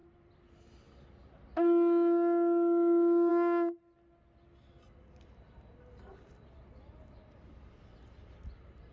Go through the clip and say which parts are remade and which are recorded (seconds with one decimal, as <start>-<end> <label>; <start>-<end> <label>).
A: 0.0-8.9 recorded